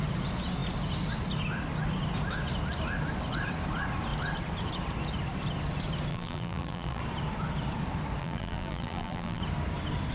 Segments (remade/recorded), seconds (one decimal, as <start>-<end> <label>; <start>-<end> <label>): 0.0-6.1 recorded; 6.1-7.0 remade; 7.0-8.2 recorded; 8.2-9.4 remade; 9.4-10.1 recorded